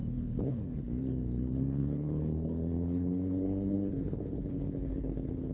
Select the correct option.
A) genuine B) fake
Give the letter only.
B